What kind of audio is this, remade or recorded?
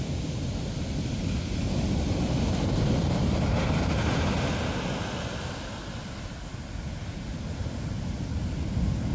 recorded